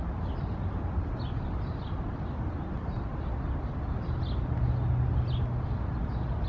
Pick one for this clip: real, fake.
real